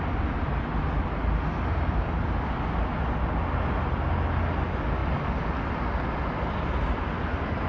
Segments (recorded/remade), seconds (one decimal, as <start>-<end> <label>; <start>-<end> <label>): 0.0-7.7 recorded